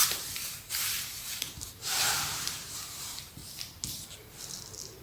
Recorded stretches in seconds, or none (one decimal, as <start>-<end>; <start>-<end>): 3.4-5.0